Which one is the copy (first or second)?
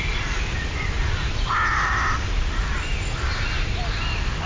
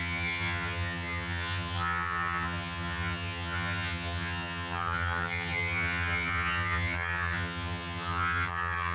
second